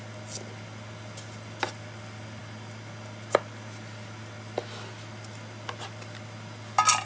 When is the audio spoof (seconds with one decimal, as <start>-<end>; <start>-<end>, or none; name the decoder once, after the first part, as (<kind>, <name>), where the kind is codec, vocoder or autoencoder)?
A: none